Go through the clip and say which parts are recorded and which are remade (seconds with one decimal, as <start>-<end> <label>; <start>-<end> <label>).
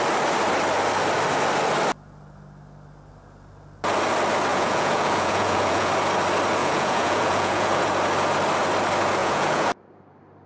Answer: 0.0-4.5 recorded; 4.5-5.9 remade; 5.9-6.6 recorded; 6.6-7.8 remade; 7.8-9.2 recorded; 9.2-9.7 remade; 9.7-10.5 recorded